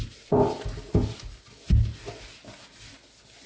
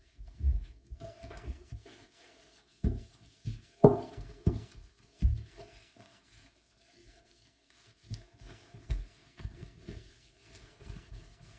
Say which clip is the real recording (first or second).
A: first